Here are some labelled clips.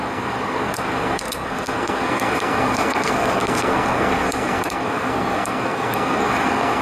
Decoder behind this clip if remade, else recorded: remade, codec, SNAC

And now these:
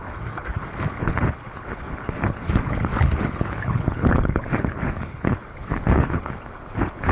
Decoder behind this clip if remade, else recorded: remade, codec, HILCodec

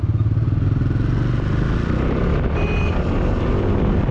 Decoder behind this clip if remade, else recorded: recorded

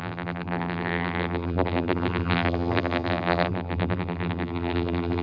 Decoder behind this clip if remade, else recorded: remade, vocoder, BigVGAN v2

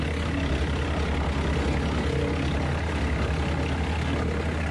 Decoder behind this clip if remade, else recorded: recorded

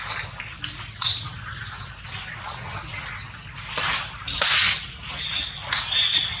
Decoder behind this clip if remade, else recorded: recorded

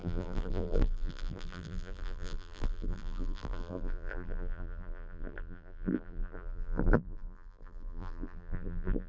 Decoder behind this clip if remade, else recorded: remade, vocoder, BigVGAN v2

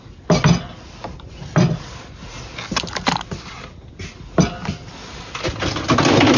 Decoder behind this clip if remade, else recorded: recorded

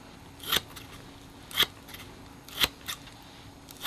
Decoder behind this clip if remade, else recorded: recorded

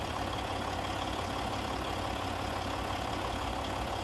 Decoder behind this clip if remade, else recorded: remade, vocoder, Vocos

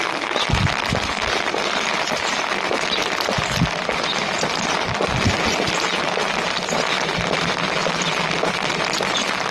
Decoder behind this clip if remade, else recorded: recorded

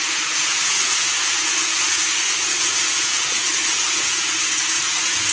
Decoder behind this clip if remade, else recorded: remade, vocoder, Vocos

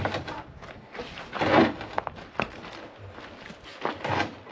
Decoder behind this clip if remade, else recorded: recorded